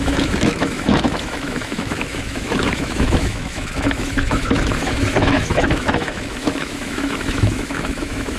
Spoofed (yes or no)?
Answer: yes